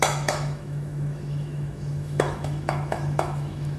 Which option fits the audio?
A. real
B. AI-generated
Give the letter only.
B